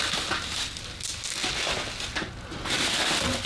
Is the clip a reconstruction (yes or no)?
no